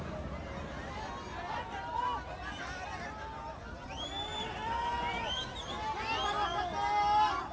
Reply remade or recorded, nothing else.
recorded